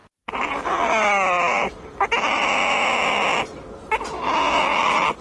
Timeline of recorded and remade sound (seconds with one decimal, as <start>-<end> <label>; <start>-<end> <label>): 0.0-5.2 recorded